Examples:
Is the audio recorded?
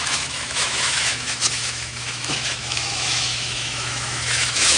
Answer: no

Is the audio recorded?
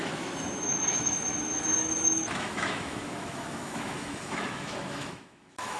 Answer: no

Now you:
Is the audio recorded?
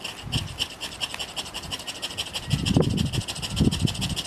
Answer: yes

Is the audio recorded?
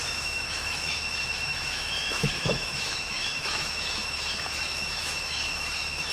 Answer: no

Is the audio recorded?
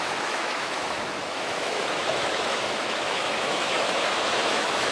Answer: no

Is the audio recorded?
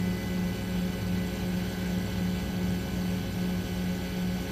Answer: yes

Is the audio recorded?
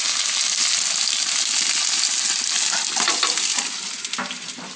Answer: yes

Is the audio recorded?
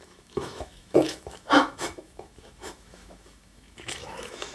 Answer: no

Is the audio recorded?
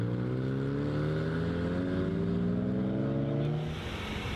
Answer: yes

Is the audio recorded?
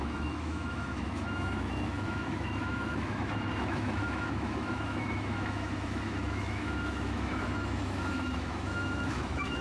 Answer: no